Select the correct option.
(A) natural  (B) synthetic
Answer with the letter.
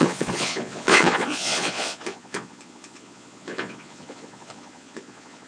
B